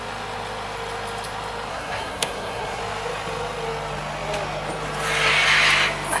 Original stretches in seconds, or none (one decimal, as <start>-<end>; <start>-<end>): 0.0-1.7; 2.8-6.2